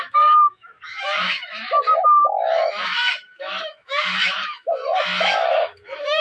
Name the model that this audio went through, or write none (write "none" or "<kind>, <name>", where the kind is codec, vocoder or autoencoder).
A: autoencoder, DAC-VAE